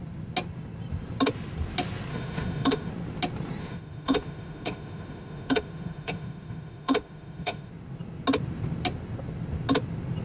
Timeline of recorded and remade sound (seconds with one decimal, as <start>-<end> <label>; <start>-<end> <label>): 0.0-2.1 recorded; 2.1-2.9 remade; 2.9-3.6 recorded; 3.6-7.7 remade; 7.7-10.2 recorded

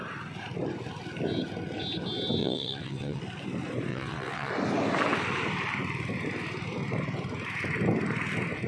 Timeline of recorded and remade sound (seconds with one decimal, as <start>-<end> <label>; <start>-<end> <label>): 0.0-2.4 recorded; 2.4-3.2 remade; 3.2-3.9 recorded; 3.9-4.5 remade; 4.5-8.7 recorded

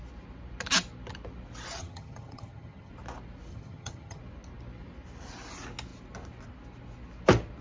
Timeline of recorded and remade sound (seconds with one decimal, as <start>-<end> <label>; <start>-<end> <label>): 0.0-1.8 recorded; 1.8-2.9 remade; 2.9-3.5 recorded; 3.5-4.2 remade; 4.2-7.6 recorded